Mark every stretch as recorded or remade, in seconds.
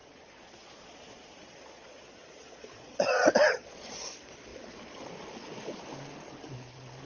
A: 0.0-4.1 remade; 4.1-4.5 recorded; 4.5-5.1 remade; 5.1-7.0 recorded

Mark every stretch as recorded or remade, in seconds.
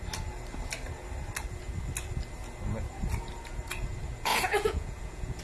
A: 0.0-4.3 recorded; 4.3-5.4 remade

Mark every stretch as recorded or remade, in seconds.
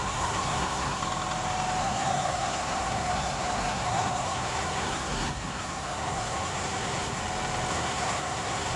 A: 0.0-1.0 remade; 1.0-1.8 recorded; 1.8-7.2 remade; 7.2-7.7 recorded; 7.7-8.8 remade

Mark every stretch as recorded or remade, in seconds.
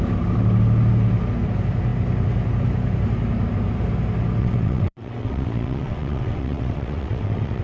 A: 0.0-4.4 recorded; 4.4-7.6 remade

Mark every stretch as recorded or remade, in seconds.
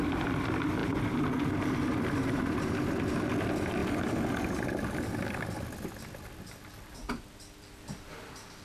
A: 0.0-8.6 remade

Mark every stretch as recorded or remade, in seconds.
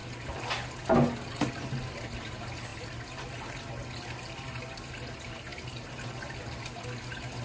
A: 0.0-2.7 recorded; 2.7-4.9 remade; 4.9-5.5 recorded; 5.5-6.4 remade; 6.4-7.4 recorded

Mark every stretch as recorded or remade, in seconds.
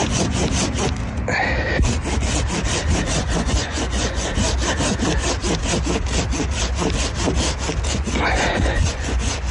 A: 0.0-0.4 remade; 0.4-3.1 recorded; 3.1-4.3 remade; 4.3-7.9 recorded; 7.9-9.5 remade